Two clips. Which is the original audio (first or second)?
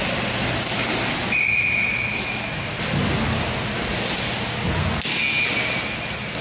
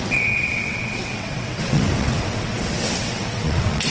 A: first